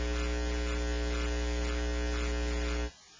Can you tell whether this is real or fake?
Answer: real